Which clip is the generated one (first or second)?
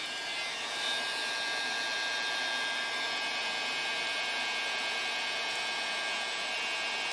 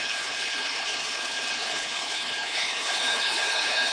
second